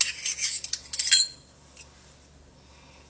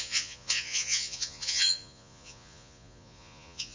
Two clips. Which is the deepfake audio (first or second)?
second